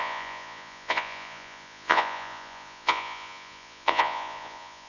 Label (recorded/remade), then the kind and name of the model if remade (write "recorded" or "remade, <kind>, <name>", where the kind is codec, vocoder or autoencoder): remade, vocoder, Vocos